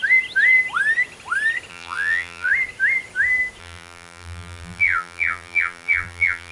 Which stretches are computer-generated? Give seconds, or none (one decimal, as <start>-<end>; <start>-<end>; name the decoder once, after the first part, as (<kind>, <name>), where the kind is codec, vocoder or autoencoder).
1.7-2.5 (vocoder, BigVGAN v2); 3.6-6.5

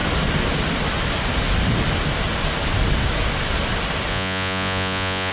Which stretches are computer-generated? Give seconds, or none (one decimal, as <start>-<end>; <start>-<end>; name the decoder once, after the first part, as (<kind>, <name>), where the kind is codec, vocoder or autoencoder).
4.1-5.3 (vocoder, Vocos)

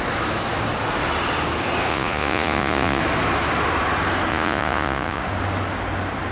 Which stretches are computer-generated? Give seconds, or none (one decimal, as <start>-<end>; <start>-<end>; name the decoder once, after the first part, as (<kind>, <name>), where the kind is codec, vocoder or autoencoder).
1.9-3.0 (vocoder, Vocos); 4.3-5.2